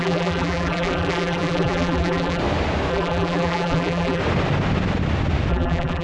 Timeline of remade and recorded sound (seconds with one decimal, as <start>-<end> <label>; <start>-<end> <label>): 0.0-2.4 remade; 2.4-2.9 recorded; 2.9-4.2 remade; 4.2-5.5 recorded; 5.5-6.0 remade